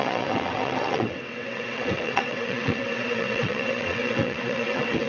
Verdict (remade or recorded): remade